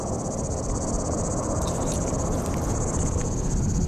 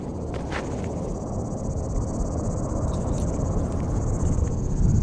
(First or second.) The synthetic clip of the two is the first